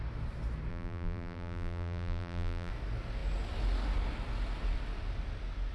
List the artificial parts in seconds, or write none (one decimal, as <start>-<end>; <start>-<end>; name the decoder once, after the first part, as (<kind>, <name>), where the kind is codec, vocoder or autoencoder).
0.7-2.7 (vocoder, BigVGAN v2)